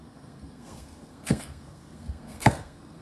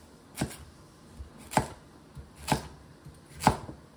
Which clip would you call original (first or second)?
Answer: second